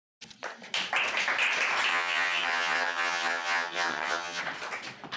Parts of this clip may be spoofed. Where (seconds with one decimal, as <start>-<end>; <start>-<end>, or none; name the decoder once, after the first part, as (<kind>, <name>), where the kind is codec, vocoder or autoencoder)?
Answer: 1.9-4.4 (vocoder, HiFi-GAN)